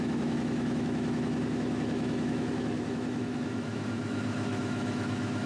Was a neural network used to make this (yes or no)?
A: yes